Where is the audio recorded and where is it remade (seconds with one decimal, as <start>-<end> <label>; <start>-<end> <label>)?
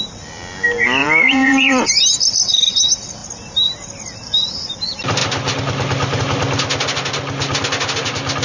0.0-1.0 recorded; 1.0-1.9 remade; 1.9-8.4 recorded